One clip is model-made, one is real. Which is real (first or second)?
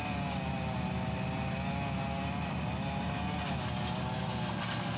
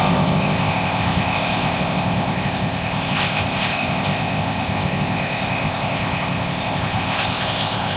first